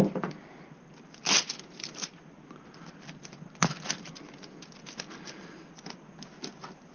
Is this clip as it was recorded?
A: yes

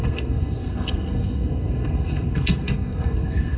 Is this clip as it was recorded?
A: no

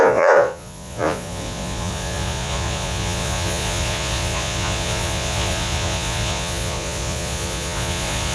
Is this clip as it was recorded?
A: no